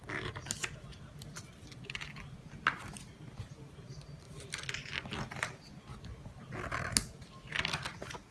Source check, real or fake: real